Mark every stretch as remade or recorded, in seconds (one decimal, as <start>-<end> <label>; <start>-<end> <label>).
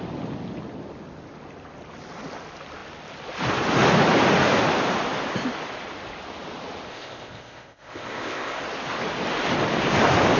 0.0-6.9 recorded; 6.9-8.6 remade; 8.6-10.4 recorded